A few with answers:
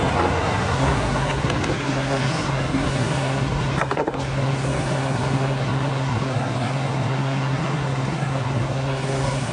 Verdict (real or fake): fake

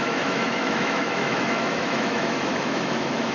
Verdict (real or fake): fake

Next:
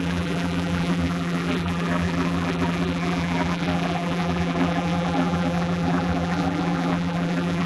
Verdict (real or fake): fake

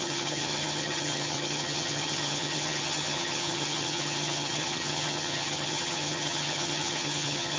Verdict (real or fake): fake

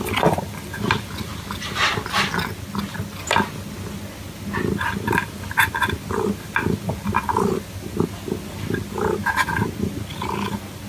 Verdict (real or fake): real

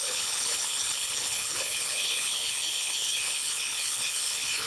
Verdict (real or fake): fake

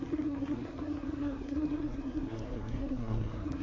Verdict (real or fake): fake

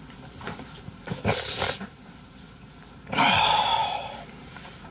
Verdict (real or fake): fake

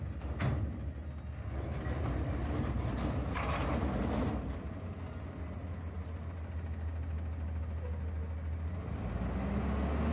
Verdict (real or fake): real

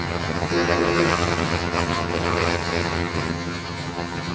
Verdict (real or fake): fake